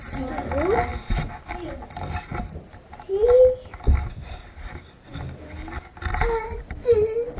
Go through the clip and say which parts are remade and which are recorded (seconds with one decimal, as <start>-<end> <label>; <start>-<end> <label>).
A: 0.0-7.4 recorded